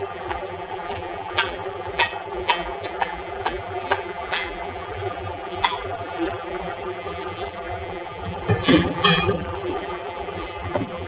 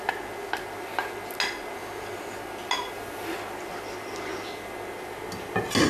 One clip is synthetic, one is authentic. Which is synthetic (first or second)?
first